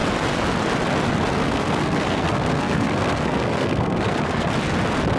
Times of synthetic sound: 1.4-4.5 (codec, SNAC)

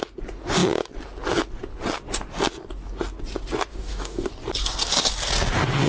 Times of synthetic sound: 3.7-4.3 (codec, DAC)

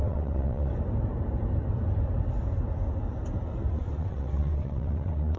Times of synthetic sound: 0.0-0.7 (vocoder, WaveNeXt); 3.7-5.4

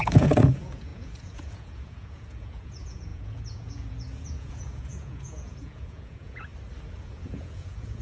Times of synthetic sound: 0.0-6.5 (vocoder, Vocos); 7.0-8.0

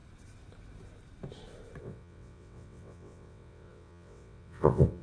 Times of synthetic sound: 1.8-5.0 (vocoder, WaveNeXt)

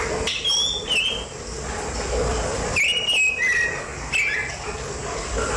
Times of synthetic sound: none

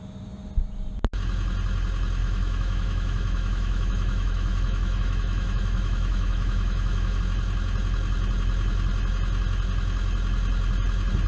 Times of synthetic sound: 2.2-7.2 (autoencoder, DAC-VAE)